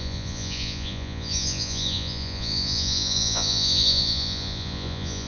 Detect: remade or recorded remade